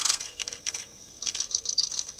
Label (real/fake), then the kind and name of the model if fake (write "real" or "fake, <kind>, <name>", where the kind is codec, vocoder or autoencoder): fake, codec, SNAC